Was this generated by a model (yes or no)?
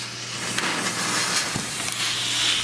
no